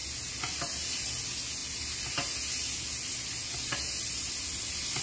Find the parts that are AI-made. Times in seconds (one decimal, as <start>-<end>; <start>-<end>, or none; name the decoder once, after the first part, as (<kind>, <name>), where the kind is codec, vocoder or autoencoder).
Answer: none